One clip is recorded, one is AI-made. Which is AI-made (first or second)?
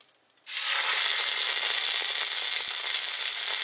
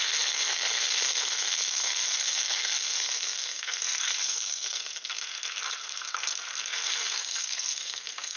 second